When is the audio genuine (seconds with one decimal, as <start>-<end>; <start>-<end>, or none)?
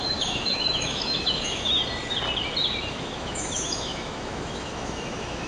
1.8-2.9